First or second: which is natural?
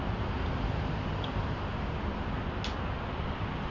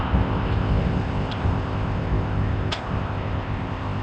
first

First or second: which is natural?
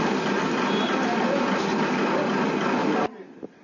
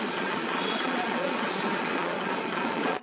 first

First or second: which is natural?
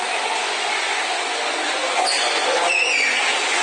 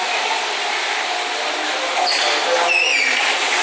second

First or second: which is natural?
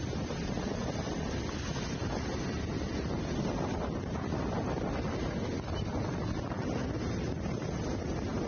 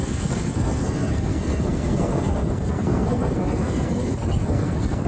first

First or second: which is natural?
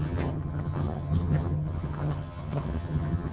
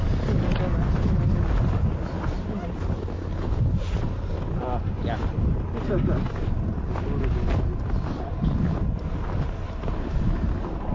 second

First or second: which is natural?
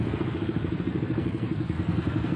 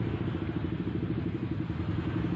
second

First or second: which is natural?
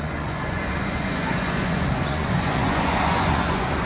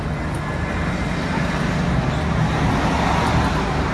second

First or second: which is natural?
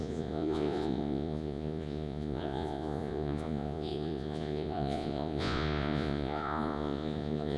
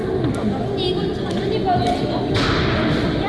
second